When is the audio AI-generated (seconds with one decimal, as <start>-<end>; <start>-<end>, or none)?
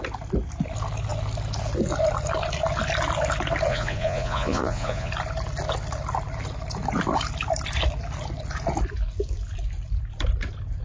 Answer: 3.7-5.1